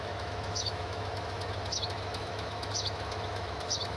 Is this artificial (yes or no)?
yes